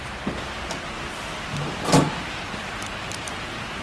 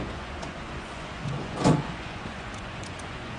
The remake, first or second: second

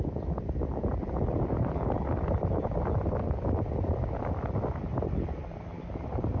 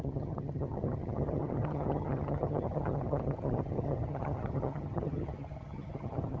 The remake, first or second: second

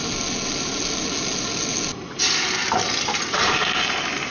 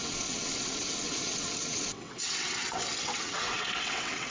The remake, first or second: second